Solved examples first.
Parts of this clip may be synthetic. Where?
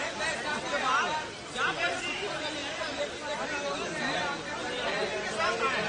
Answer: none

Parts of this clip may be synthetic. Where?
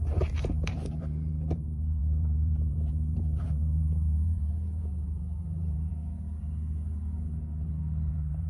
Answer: 0.0-5.9 (vocoder, BigVGAN v2); 8.1-8.5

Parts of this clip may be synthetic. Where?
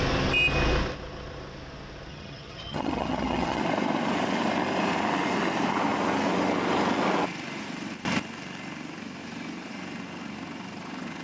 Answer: 2.1-3.6 (vocoder, HiFi-GAN)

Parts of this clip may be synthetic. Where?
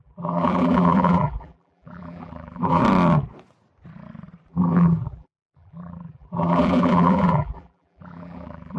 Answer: 0.0-2.8 (vocoder, BigVGAN v2); 4.5-8.8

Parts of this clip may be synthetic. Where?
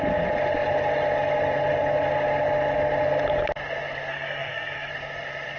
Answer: 4.1-4.9 (codec, SNAC)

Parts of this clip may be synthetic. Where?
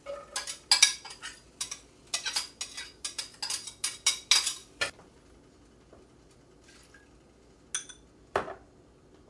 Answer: none